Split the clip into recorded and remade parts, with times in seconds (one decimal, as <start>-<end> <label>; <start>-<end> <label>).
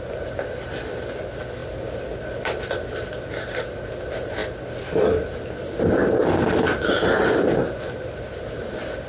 0.0-1.6 recorded; 1.6-2.2 remade; 2.2-9.1 recorded